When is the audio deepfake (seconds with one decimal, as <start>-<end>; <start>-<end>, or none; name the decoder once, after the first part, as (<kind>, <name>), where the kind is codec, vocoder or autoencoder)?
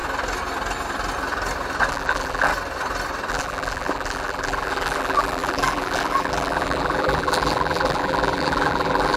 1.9-2.5 (vocoder, BigVGAN v2); 3.3-9.2